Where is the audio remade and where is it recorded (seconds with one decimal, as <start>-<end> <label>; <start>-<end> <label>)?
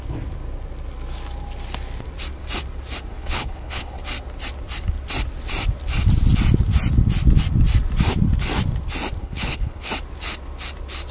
0.0-3.1 recorded; 3.1-4.0 remade; 4.0-9.2 recorded; 9.2-9.9 remade; 9.9-11.1 recorded